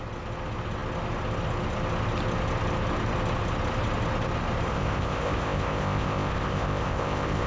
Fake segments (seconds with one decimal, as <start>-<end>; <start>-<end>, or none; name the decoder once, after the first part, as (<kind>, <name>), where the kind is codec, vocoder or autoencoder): 4.7-7.5 (codec, ZipCodec)